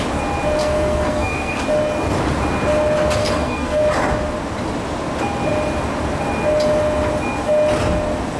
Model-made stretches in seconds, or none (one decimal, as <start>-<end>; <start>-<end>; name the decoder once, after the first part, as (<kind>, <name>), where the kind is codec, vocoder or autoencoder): 0.6-1.6 (codec, SNAC); 3.2-3.8